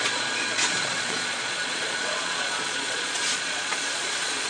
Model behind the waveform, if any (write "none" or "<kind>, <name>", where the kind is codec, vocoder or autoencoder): vocoder, Vocos